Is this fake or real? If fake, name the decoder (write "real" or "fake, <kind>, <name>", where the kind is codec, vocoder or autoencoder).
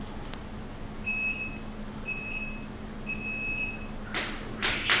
real